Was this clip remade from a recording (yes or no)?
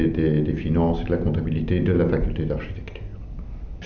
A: no